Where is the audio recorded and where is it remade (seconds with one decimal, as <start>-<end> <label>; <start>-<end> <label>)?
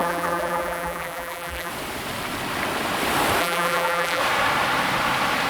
0.0-1.7 remade; 1.7-3.4 recorded; 3.4-4.2 remade; 4.2-5.5 recorded